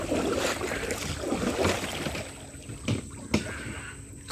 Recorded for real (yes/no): yes